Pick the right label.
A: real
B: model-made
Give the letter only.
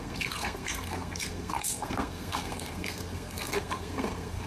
B